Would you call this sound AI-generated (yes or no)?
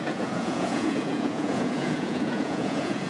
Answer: yes